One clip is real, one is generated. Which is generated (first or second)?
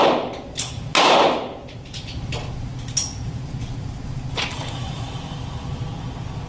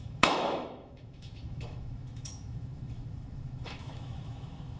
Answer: second